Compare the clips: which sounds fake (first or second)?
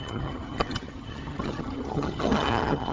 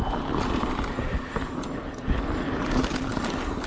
first